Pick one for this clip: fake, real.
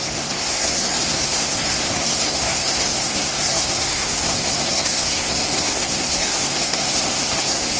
fake